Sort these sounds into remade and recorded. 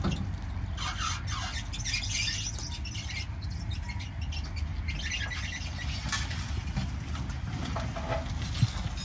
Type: recorded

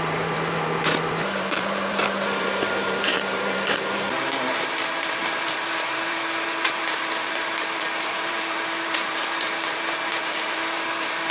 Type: remade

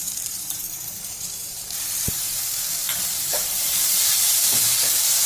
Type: remade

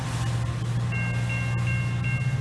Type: recorded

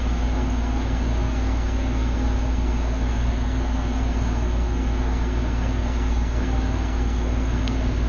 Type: remade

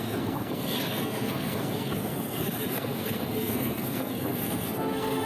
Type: remade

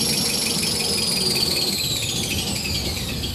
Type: recorded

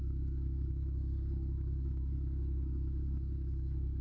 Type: remade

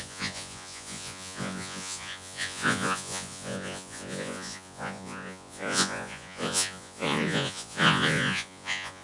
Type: remade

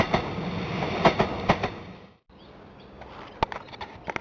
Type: recorded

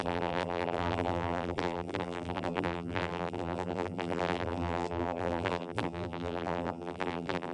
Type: remade